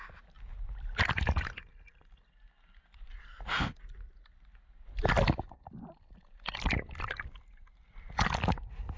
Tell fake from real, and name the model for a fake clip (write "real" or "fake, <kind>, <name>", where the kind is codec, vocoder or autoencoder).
real